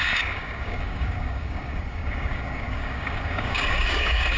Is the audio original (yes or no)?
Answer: no